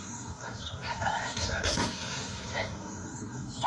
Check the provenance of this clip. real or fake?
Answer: fake